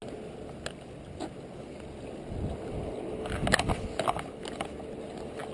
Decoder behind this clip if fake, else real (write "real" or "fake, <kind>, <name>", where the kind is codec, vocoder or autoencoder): real